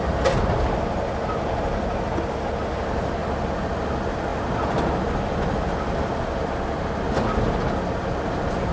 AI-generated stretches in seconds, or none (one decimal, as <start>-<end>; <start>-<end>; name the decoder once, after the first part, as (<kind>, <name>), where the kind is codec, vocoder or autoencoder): none